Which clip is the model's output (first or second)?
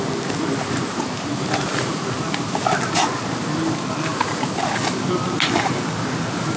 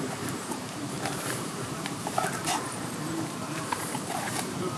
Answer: second